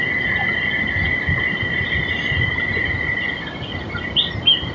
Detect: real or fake real